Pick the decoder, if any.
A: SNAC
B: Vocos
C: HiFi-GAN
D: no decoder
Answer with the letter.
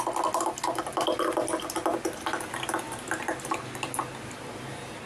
D